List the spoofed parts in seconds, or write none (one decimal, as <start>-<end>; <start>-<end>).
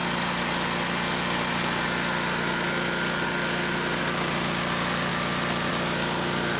none